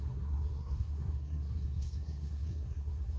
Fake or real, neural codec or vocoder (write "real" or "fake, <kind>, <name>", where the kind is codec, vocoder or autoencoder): fake, codec, SNAC